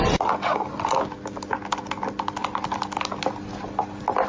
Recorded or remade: recorded